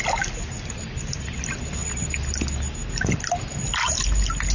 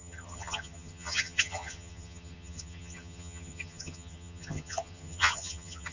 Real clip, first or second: first